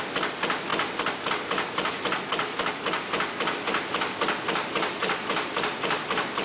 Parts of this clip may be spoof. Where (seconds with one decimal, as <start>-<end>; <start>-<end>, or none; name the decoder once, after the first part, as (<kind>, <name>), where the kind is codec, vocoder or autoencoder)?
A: none